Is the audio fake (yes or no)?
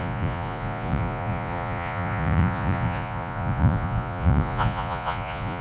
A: yes